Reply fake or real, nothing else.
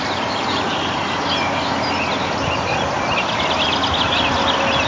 real